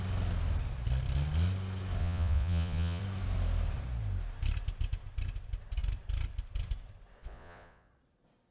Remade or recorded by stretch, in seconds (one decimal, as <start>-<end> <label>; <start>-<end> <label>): 0.0-2.0 recorded; 2.0-3.0 remade; 3.0-7.2 recorded; 7.2-7.9 remade; 7.9-8.5 recorded